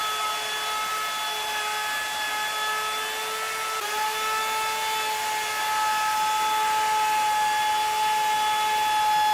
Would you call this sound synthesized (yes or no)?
no